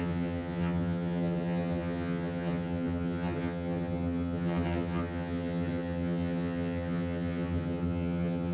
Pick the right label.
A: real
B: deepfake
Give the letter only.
B